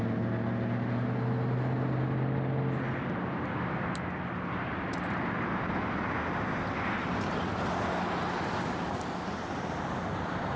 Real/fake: real